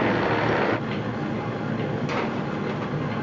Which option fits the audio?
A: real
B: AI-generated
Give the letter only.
A